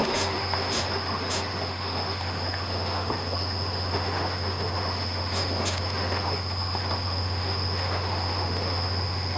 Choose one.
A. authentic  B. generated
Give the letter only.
B